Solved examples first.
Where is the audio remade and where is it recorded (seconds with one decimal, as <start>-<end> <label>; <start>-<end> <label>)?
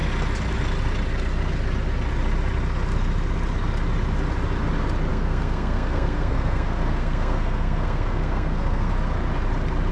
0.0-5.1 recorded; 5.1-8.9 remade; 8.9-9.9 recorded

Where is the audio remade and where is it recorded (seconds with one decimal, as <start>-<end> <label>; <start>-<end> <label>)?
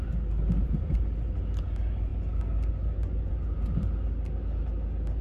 0.0-5.2 recorded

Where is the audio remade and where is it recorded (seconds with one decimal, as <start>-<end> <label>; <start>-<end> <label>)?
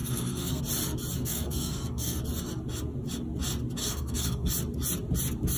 0.0-0.6 remade; 0.6-1.2 recorded; 1.2-2.2 remade; 2.2-3.8 recorded; 3.8-4.5 remade; 4.5-5.6 recorded